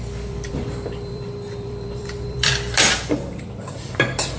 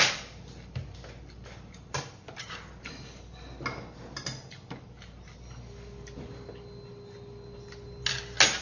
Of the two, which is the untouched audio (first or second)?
second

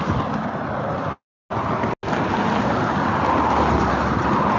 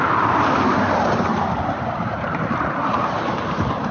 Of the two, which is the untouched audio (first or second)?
first